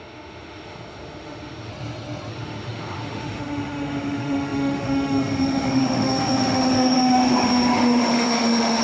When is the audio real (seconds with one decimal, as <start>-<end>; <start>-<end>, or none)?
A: 1.7-2.3